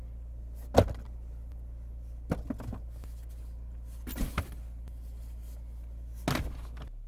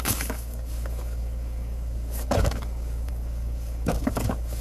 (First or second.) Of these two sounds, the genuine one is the first